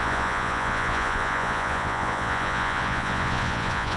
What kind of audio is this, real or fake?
fake